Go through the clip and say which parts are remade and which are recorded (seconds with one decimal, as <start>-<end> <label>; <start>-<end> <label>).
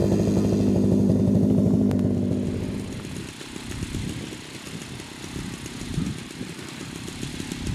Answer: 0.0-5.9 recorded; 5.9-7.3 remade; 7.3-7.7 recorded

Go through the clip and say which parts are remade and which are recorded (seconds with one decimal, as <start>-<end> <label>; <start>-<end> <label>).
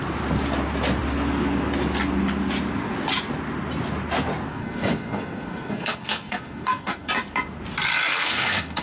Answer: 0.0-4.5 recorded; 4.5-7.1 remade; 7.1-8.0 recorded; 8.0-8.8 remade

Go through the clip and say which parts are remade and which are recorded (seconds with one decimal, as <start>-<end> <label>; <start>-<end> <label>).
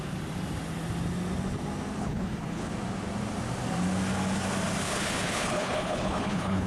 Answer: 0.0-2.0 recorded; 2.0-2.7 remade; 2.7-4.8 recorded; 4.8-6.7 remade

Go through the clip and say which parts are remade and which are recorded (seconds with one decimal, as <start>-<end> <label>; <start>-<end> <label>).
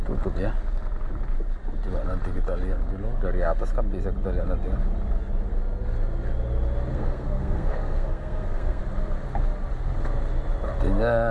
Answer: 0.0-6.9 recorded; 6.9-8.8 remade; 8.8-11.3 recorded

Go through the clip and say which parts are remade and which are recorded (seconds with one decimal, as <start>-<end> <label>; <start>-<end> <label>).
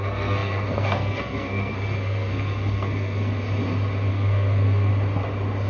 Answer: 0.0-3.3 remade; 3.3-4.1 recorded; 4.1-4.9 remade; 4.9-5.7 recorded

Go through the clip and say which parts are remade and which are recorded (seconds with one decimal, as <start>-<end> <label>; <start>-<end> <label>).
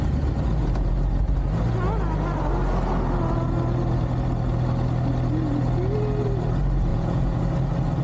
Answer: 0.0-6.9 recorded; 6.9-7.4 remade; 7.4-8.0 recorded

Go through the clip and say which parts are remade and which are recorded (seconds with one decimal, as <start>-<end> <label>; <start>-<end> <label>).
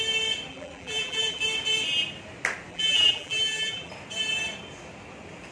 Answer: 0.0-0.5 recorded; 0.5-1.4 remade; 1.4-2.7 recorded; 2.7-3.9 remade; 3.9-5.5 recorded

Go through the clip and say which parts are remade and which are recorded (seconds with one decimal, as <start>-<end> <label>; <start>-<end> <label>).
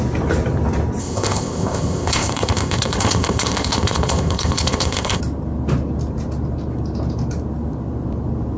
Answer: 0.0-1.0 recorded; 1.0-5.2 remade; 5.2-8.6 recorded